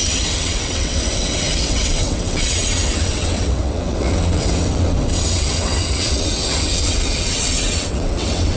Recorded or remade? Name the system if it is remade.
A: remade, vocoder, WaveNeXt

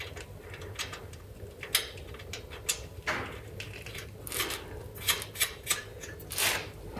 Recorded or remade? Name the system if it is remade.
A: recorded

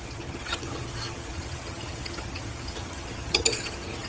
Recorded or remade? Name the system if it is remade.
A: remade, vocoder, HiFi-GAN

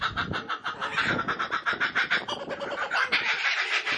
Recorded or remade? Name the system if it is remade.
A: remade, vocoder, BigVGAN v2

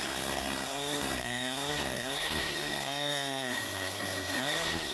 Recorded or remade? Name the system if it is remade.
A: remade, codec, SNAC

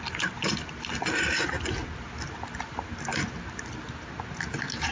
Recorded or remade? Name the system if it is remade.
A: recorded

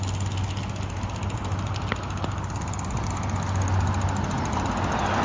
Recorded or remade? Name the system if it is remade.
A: recorded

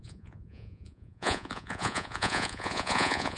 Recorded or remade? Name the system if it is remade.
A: remade, vocoder, Vocos